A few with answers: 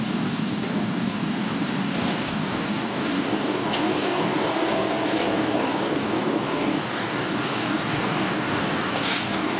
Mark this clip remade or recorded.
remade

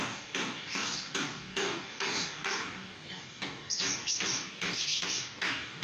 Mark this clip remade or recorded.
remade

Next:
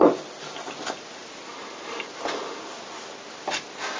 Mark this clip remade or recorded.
recorded